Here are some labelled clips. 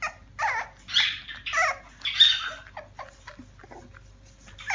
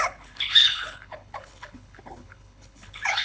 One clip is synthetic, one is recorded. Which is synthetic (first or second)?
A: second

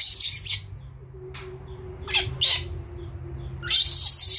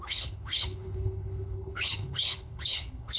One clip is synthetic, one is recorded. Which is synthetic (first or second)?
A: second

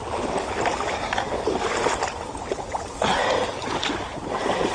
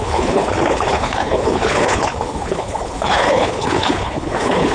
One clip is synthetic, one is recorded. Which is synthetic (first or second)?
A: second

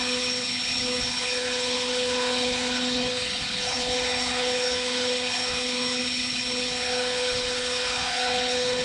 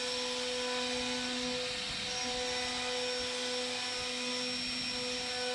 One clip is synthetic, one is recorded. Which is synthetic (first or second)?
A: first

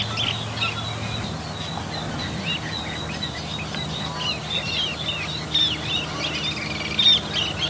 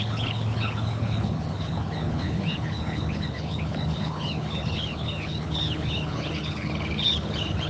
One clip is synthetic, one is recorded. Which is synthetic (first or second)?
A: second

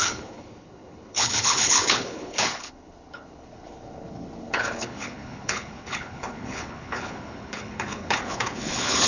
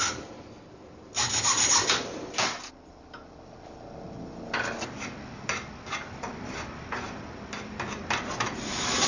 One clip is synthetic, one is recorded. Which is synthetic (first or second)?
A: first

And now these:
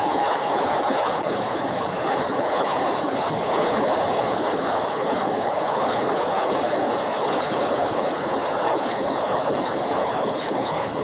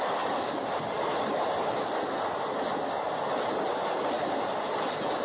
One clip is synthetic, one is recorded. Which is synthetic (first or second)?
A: first